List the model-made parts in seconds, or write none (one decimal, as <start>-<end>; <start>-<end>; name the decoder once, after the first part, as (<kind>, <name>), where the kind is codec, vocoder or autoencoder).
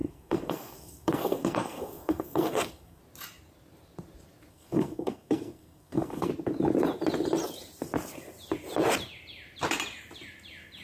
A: 0.0-3.0 (codec, SNAC); 4.5-6.3